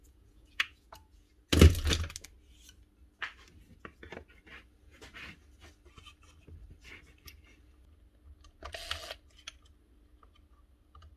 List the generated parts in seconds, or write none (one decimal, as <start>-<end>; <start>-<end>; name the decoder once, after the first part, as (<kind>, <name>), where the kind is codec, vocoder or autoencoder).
0.0-1.3 (vocoder, Vocos)